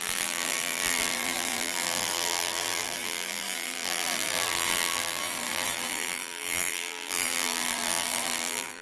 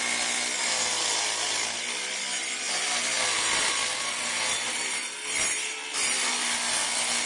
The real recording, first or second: second